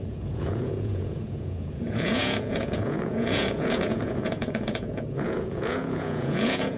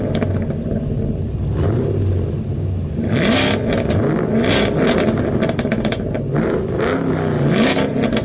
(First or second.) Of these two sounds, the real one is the second